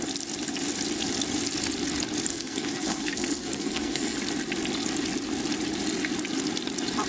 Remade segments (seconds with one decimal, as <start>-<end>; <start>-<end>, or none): 2.3-4.2

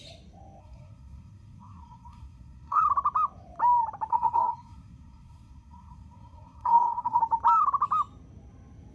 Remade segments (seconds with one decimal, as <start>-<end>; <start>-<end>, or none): 0.6-2.8; 4.1-7.2

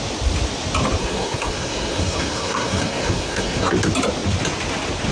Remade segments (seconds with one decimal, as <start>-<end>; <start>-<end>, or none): 1.0-3.7